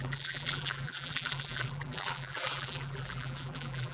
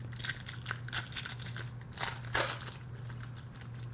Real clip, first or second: second